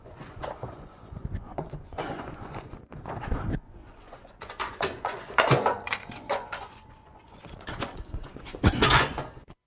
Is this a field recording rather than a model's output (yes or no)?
no